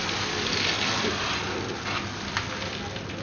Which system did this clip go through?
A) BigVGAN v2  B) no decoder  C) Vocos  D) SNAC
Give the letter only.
B